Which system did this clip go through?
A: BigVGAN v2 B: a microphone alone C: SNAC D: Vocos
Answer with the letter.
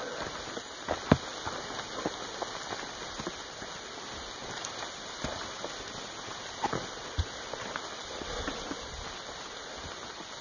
B